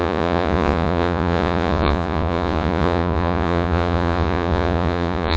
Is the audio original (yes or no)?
no